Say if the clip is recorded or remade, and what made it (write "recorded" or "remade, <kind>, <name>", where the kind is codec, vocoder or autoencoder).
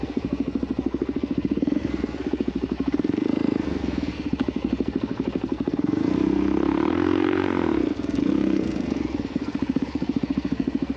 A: remade, codec, SNAC